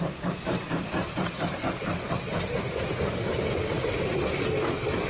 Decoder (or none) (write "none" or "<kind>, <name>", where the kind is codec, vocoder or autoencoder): none